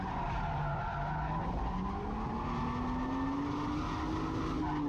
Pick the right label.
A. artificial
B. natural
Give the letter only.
B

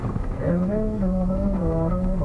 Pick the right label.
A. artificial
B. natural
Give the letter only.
A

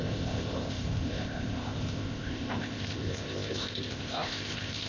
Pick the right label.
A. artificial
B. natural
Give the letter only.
A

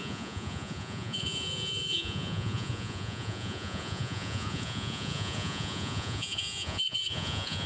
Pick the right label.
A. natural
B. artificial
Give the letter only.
B